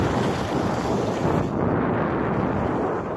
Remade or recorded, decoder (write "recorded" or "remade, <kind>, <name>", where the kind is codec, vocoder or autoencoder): recorded